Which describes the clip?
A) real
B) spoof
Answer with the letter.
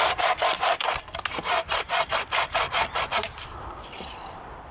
A